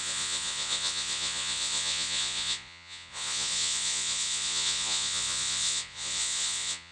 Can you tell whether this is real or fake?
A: fake